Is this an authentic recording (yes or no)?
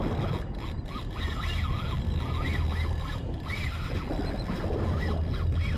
yes